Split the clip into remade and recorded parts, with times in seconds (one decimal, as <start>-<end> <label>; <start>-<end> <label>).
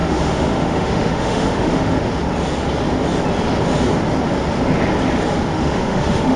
0.0-2.1 remade; 2.1-5.5 recorded; 5.5-6.4 remade